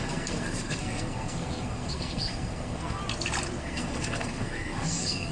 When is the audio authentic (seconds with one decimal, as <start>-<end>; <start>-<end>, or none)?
3.0-3.6